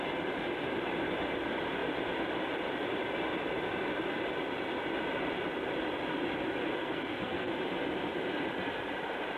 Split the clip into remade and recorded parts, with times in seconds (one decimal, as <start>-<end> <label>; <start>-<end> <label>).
0.0-6.7 recorded; 6.7-7.5 remade; 7.5-9.4 recorded